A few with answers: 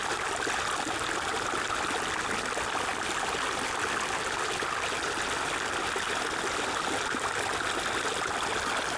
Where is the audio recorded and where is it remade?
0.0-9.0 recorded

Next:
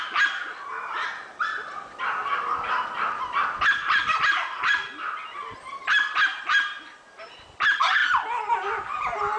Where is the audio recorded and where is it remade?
0.0-2.2 recorded; 2.2-4.9 remade; 4.9-9.4 recorded

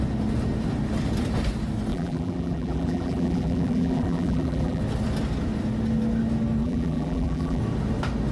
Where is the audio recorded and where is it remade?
0.0-1.9 recorded; 1.9-4.8 remade; 4.8-6.6 recorded; 6.6-7.6 remade; 7.6-8.3 recorded